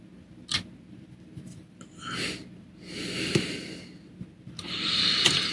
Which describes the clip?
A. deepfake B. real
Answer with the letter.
B